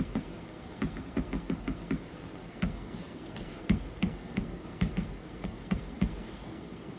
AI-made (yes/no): yes